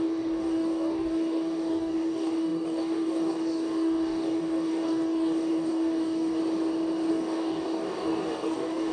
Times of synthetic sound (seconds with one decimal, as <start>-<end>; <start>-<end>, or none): 0.0-6.4; 7.1-8.9